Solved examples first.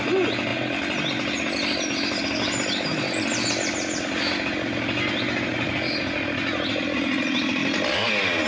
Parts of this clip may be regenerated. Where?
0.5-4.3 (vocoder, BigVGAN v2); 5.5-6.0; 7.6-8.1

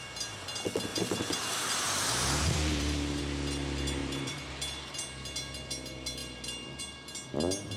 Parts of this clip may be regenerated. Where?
0.9-3.2 (vocoder, BigVGAN v2); 4.0-4.5

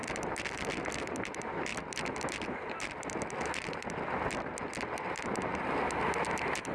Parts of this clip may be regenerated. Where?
none

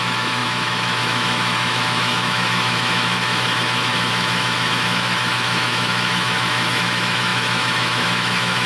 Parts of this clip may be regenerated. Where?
0.0-8.7 (autoencoder, DAC-VAE)

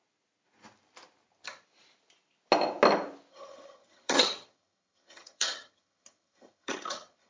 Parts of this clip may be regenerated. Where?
3.3-7.3 (vocoder, HiFi-GAN)

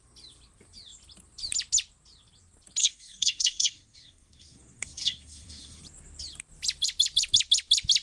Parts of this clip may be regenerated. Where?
2.8-5.8 (codec, SNAC)

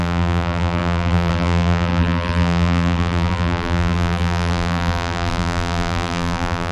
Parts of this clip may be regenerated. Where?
0.0-6.7 (vocoder, BigVGAN v2)

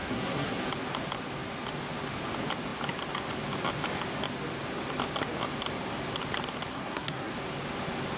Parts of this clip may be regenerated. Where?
0.0-0.6 (codec, SNAC); 6.7-7.3